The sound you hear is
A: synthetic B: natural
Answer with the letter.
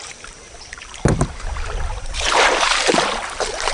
A